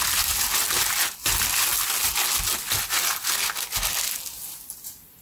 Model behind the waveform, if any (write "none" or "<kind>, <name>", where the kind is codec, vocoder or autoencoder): none